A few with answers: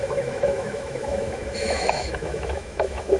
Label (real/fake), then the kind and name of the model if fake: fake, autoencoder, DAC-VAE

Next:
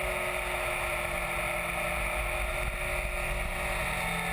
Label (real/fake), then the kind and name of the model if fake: real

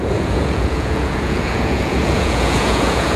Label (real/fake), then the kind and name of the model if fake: fake, vocoder, Vocos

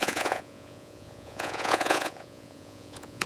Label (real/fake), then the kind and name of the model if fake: fake, vocoder, Vocos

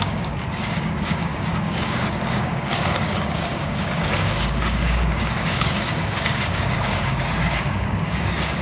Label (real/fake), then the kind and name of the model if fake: fake, codec, DAC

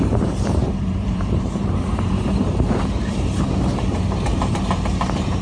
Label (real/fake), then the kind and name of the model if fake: fake, vocoder, BigVGAN v2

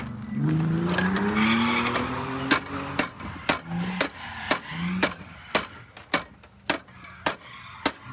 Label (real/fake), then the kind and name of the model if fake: real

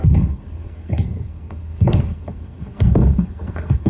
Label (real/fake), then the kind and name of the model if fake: fake, codec, SNAC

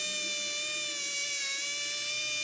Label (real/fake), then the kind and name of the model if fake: real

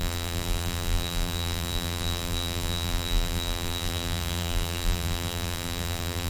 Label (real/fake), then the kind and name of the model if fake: fake, vocoder, BigVGAN v2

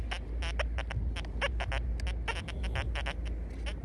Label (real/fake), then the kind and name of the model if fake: real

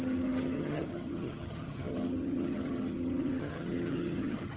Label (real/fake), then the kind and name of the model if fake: fake, vocoder, HiFi-GAN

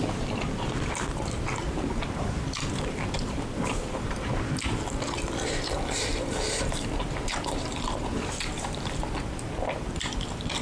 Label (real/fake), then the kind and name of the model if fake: fake, vocoder, BigVGAN v2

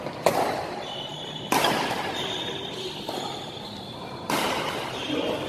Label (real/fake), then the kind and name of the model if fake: fake, vocoder, BigVGAN v2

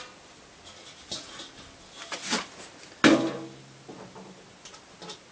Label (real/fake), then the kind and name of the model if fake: real